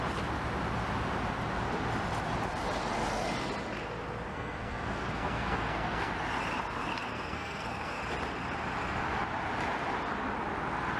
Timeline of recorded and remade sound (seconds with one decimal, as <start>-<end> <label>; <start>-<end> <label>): 0.0-4.3 recorded; 4.3-6.1 remade; 6.1-6.9 recorded; 6.9-8.0 remade; 8.0-11.0 recorded